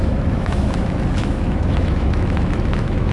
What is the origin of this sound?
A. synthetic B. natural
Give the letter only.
A